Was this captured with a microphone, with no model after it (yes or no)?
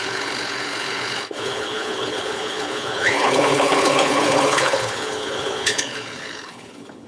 no